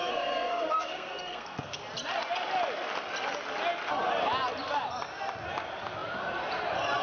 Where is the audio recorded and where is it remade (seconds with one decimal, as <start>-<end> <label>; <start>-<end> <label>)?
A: 0.0-1.8 remade; 1.8-7.0 recorded